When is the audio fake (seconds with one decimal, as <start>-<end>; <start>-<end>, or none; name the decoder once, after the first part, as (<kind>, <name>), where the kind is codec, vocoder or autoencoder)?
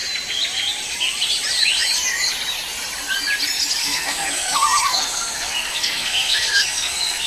3.8-7.3 (codec, SNAC)